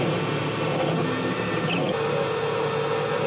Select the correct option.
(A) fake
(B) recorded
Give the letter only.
B